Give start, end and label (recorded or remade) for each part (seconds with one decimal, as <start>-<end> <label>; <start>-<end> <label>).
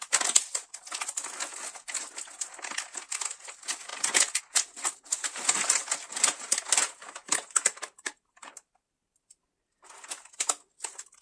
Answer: 0.0-6.1 recorded; 6.1-9.5 remade; 9.5-11.2 recorded